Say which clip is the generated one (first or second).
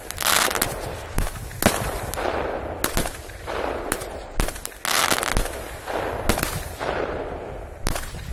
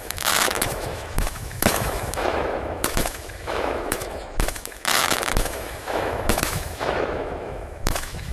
second